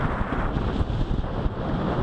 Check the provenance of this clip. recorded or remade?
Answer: recorded